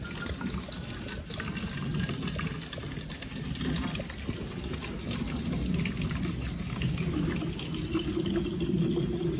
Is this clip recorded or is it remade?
recorded